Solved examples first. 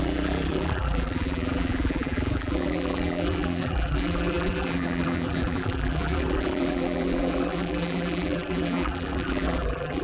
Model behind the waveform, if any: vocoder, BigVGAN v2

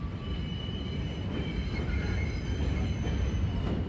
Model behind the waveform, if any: none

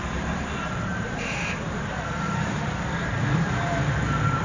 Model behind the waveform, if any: vocoder, BigVGAN v2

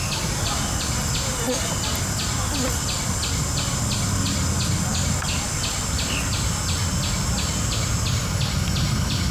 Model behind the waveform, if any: none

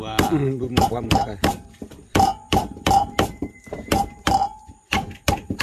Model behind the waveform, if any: vocoder, BigVGAN v2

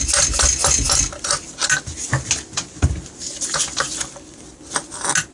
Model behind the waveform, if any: none